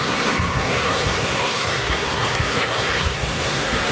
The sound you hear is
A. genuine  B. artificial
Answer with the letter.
B